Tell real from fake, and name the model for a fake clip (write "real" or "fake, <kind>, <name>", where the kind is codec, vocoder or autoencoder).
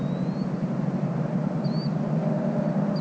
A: real